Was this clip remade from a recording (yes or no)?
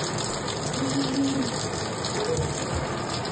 no